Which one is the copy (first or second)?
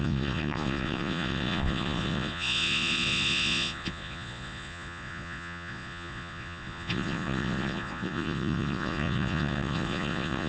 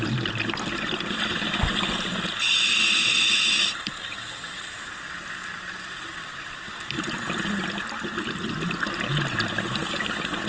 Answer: first